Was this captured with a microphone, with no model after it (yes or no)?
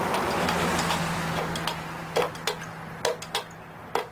yes